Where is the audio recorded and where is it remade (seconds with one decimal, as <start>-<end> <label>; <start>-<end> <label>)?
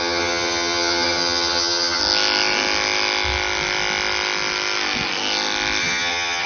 0.0-2.0 remade; 2.0-5.8 recorded; 5.8-6.5 remade